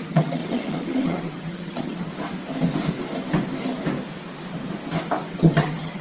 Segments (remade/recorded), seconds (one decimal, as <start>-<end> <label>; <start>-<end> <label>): 0.0-2.1 remade; 2.1-5.3 recorded; 5.3-6.0 remade